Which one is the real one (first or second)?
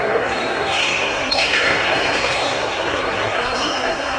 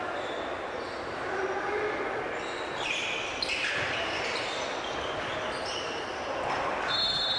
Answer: second